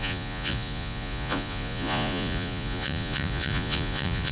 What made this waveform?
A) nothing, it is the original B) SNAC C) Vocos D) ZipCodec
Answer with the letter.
C